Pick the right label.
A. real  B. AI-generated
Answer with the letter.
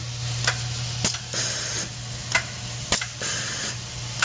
A